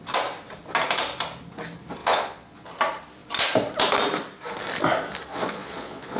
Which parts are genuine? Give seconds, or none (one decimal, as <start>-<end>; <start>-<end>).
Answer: 0.0-2.0; 2.7-5.3